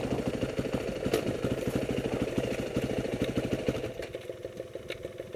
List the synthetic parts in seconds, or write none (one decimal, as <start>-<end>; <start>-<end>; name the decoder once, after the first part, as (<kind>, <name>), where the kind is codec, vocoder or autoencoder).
none